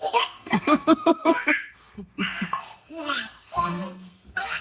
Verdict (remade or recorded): remade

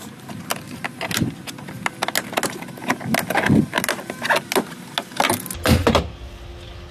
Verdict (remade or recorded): recorded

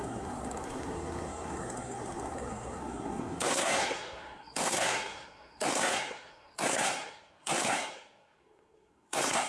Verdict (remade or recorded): remade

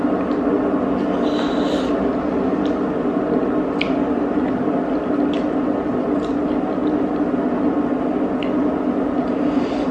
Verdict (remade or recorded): recorded